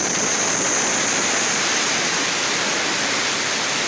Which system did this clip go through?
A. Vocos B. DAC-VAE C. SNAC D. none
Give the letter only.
D